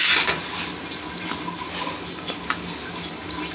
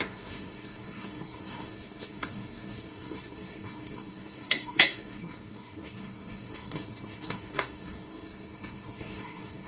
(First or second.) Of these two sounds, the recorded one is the first